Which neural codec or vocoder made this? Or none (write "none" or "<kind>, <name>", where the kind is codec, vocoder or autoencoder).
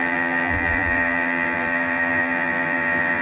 vocoder, BigVGAN v2